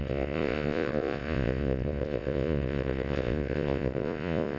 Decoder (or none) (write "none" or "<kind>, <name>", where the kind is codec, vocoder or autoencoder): vocoder, Vocos